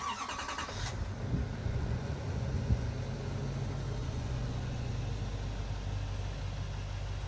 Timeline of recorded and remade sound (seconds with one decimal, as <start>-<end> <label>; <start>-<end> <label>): 0.0-1.6 recorded; 1.6-2.9 remade; 2.9-4.0 recorded; 4.0-4.9 remade; 4.9-7.3 recorded